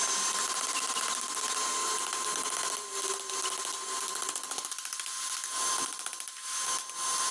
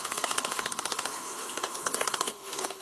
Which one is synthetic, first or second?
second